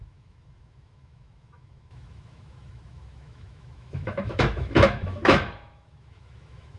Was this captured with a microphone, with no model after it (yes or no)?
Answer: no